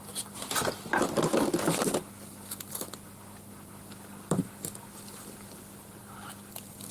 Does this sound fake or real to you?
real